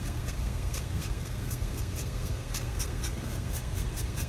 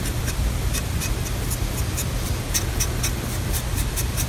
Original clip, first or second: second